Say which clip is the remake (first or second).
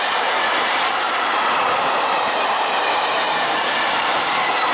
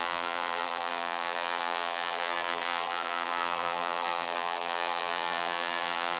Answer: second